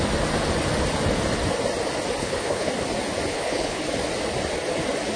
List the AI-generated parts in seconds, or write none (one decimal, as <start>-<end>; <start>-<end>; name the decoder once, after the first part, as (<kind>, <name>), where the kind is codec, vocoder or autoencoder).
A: 2.2-2.7 (codec, HILCodec); 3.3-3.8